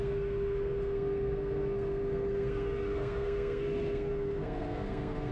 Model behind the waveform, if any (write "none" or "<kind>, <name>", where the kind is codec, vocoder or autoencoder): codec, SNAC